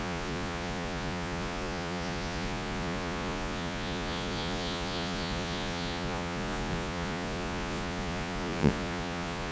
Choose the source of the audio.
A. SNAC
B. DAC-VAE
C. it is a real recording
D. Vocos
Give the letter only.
D